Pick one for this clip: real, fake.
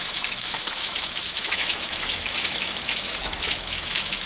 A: fake